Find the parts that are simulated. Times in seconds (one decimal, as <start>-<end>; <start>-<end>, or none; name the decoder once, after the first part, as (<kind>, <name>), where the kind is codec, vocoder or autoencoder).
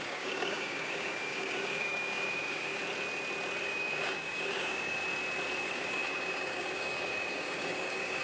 0.0-2.8 (codec, DAC); 3.6-5.0; 5.6-8.2